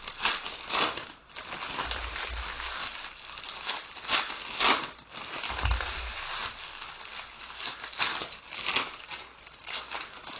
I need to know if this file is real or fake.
real